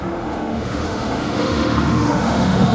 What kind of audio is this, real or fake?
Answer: fake